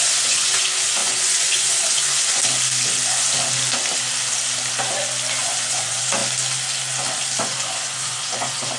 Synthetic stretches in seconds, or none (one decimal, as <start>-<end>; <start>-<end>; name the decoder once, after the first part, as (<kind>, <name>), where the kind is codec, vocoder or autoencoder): 0.0-2.4 (vocoder, Vocos); 5.4-6.2; 7.4-8.8